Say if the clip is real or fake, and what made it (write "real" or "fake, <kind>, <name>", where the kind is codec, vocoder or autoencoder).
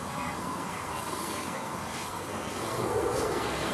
fake, codec, SNAC